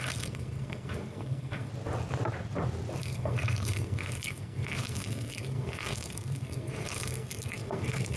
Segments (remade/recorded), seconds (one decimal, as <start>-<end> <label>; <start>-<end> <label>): 0.0-1.7 remade; 1.7-3.0 recorded; 3.0-8.2 remade